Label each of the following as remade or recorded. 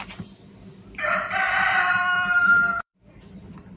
remade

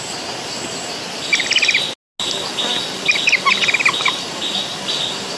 recorded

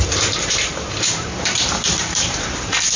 remade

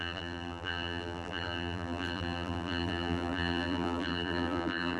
remade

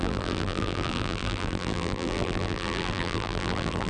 remade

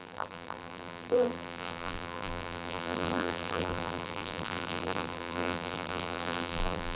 remade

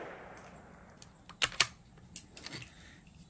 recorded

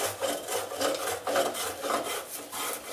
recorded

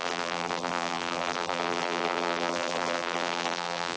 remade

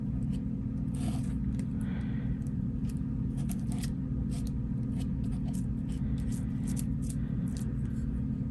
recorded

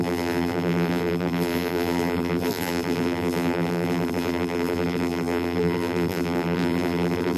remade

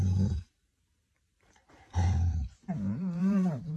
remade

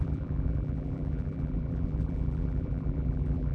remade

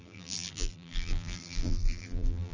remade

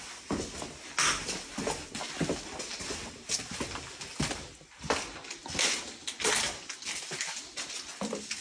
recorded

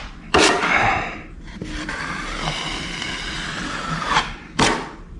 remade